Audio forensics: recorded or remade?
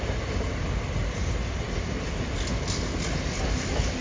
recorded